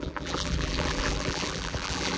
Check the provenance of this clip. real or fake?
fake